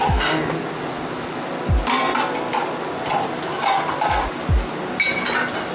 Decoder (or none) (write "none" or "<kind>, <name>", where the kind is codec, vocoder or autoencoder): none